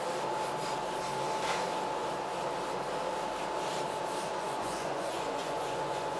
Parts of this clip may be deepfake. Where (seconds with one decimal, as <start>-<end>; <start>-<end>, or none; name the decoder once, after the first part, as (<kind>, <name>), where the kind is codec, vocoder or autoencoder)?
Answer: 4.3-6.2 (vocoder, Vocos)